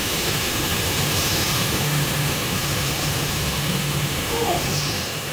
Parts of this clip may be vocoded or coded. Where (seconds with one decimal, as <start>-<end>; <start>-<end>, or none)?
0.0-5.3